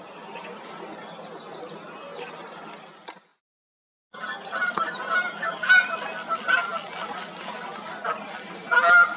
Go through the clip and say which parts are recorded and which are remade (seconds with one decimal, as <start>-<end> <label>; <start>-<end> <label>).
0.0-9.2 recorded